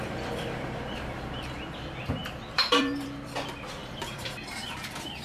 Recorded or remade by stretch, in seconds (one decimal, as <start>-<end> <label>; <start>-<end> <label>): 0.0-2.2 remade; 2.2-2.8 recorded; 2.8-5.2 remade